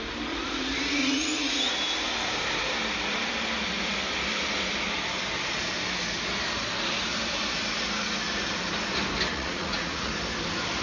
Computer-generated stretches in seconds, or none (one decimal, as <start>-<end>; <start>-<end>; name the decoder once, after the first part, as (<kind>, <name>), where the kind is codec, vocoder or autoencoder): 1.0-1.7 (vocoder, Vocos); 9.3-10.1